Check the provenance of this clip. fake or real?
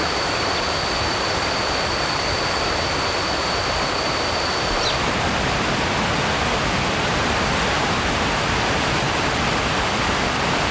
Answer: fake